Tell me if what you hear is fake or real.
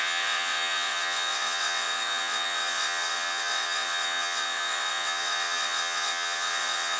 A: fake